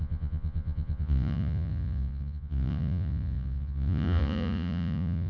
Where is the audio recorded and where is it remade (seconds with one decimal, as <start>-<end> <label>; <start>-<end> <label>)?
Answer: 0.0-5.3 remade